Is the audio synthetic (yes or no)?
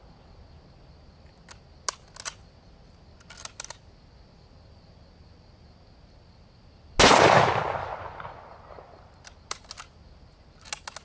no